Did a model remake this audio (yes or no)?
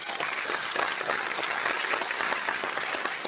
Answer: yes